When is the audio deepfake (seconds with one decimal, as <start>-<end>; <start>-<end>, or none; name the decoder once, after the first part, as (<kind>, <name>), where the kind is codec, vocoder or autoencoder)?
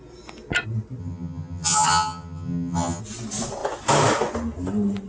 1.0-3.0 (vocoder, HiFi-GAN)